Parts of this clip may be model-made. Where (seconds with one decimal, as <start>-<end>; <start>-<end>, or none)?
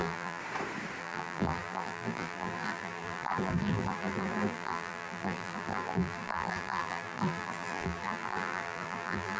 0.0-0.4; 1.0-9.4